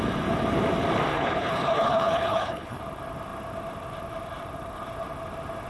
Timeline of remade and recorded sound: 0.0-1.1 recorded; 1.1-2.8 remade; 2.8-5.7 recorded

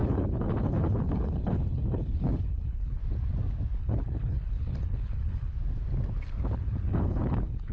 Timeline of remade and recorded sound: 0.0-3.0 remade; 3.0-3.8 recorded; 3.8-5.5 remade; 5.5-6.4 recorded; 6.4-7.7 remade